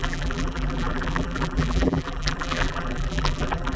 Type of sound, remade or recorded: remade